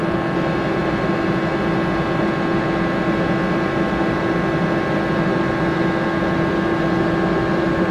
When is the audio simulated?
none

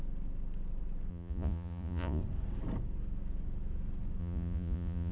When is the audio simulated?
1.1-2.2 (vocoder, Vocos); 4.2-5.1